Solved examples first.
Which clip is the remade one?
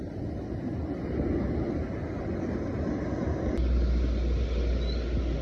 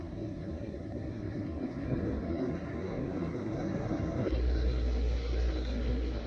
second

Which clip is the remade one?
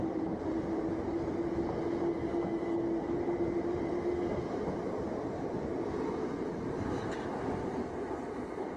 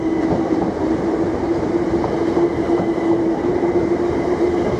second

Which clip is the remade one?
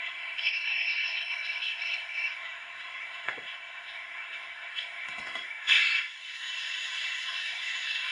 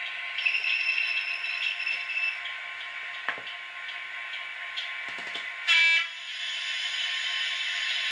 first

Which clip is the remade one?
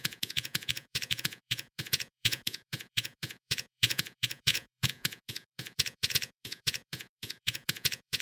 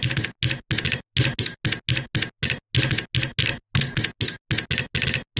first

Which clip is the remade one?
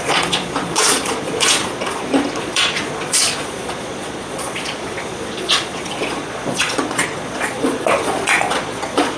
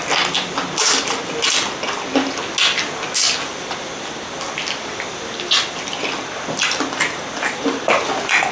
first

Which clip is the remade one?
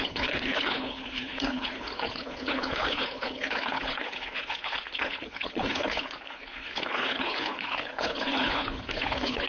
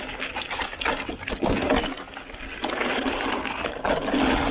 first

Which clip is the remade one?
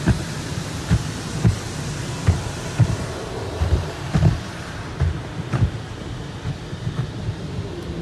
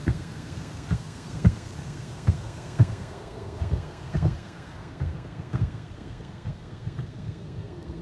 second